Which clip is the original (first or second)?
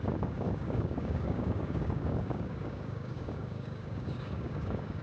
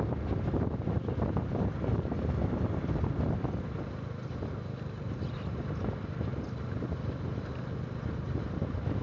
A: second